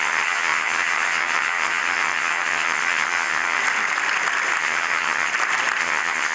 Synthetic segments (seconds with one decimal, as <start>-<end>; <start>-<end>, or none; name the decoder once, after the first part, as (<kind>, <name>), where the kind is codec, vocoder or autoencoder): 0.0-3.6 (vocoder, HiFi-GAN); 4.6-5.3; 5.8-6.3